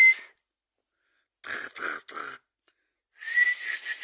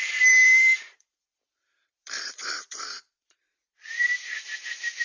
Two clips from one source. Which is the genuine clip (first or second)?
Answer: first